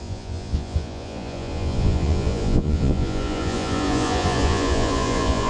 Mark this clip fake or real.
fake